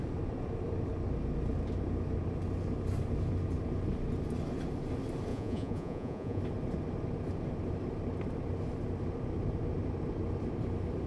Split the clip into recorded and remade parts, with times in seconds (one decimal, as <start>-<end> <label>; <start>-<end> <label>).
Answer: 0.0-5.3 recorded; 5.3-6.4 remade; 6.4-11.1 recorded